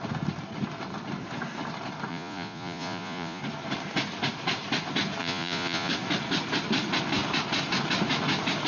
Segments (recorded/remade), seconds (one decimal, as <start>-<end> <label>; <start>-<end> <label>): 0.0-2.1 recorded; 2.1-3.4 remade; 3.4-5.2 recorded; 5.2-5.9 remade; 5.9-8.7 recorded